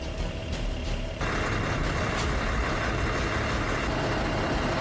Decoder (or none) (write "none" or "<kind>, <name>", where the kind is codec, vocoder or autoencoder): none